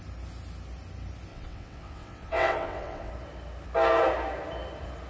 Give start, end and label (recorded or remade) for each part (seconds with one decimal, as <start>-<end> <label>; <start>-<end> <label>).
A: 0.0-1.3 recorded; 1.3-3.1 remade; 3.1-5.1 recorded